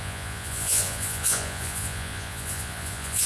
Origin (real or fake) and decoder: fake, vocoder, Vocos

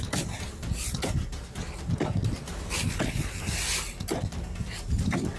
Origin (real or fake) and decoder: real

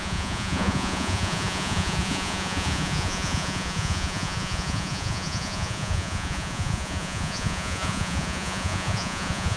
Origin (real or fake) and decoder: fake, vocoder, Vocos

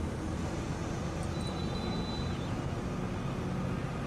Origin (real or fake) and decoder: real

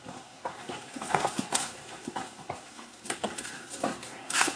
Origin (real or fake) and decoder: fake, codec, SNAC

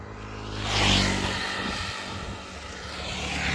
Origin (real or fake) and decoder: real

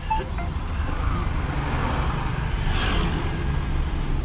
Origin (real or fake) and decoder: real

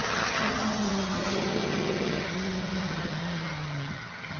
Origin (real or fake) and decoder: fake, vocoder, HiFi-GAN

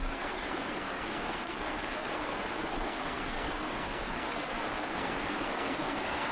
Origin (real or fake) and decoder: fake, codec, SNAC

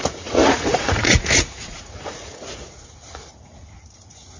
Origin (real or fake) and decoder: fake, vocoder, Vocos